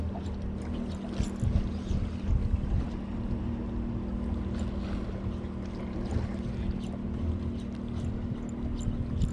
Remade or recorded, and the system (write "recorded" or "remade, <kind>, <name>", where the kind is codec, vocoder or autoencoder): recorded